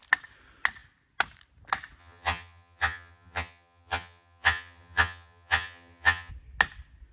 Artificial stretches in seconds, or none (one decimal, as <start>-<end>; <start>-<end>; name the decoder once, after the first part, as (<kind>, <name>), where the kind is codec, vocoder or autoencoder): 2.0-6.3 (vocoder, HiFi-GAN)